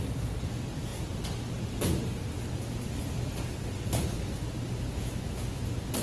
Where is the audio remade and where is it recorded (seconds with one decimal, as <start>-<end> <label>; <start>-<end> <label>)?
0.0-5.0 recorded; 5.0-5.6 remade; 5.6-6.0 recorded